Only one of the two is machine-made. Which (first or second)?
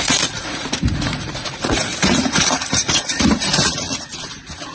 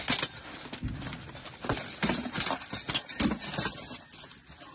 first